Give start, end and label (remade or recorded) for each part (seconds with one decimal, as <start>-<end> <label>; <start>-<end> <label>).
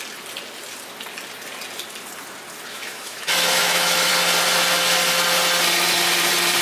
0.0-2.7 recorded; 2.7-4.1 remade; 4.1-6.6 recorded